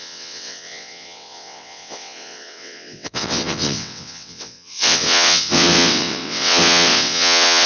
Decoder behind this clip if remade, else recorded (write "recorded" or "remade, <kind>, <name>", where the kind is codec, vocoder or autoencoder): remade, vocoder, WaveNeXt